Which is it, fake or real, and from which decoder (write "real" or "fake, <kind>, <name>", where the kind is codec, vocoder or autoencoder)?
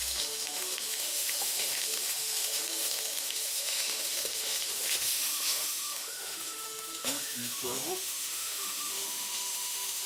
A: fake, autoencoder, DAC-VAE